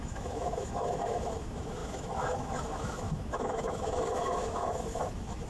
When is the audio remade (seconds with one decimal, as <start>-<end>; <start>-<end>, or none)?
0.0-5.5